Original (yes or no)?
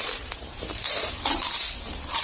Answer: no